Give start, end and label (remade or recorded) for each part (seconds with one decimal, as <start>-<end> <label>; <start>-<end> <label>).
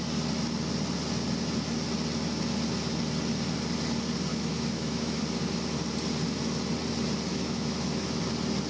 0.0-4.3 recorded; 4.3-5.2 remade; 5.2-7.3 recorded; 7.3-8.2 remade; 8.2-8.7 recorded